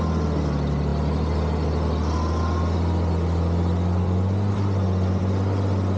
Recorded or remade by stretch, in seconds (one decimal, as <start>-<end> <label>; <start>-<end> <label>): 0.0-6.0 recorded